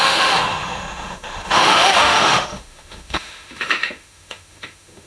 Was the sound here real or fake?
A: fake